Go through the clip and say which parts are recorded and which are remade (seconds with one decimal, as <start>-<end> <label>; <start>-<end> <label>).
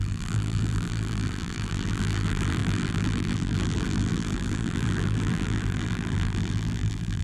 0.0-7.2 remade